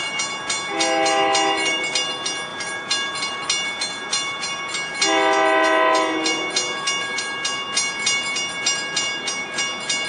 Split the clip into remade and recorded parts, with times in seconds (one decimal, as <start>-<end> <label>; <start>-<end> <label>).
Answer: 0.0-10.1 recorded